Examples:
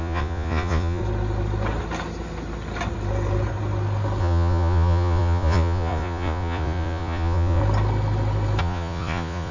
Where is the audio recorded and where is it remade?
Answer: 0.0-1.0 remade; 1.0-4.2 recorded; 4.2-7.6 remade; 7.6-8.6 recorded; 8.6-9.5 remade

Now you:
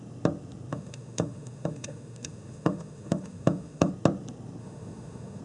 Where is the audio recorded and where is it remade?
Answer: 0.0-0.7 recorded; 0.7-3.9 remade; 3.9-4.6 recorded; 4.6-5.4 remade

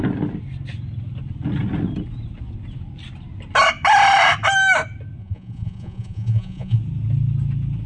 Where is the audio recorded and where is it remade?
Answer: 0.0-5.2 recorded; 5.2-6.8 remade; 6.8-7.9 recorded

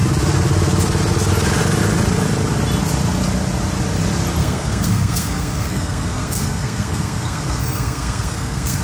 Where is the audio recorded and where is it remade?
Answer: 0.0-4.4 recorded; 4.4-8.8 remade

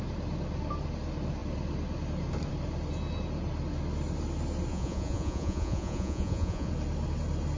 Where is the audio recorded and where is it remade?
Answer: 0.0-4.7 recorded; 4.7-6.7 remade; 6.7-7.6 recorded